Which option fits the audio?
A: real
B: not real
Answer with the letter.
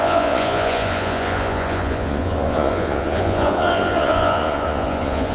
B